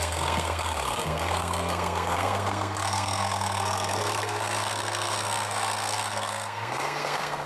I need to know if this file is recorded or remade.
remade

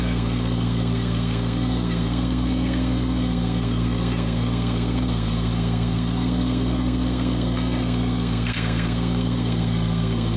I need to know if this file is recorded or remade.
remade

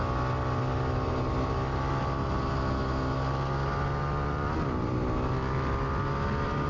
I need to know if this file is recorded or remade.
recorded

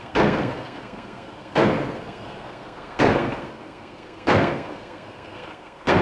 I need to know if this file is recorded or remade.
remade